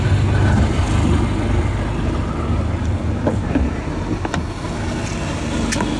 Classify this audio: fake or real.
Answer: real